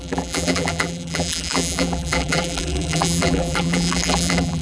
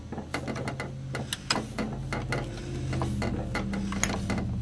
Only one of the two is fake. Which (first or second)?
first